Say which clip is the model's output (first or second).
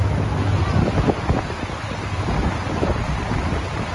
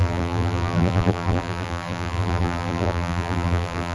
second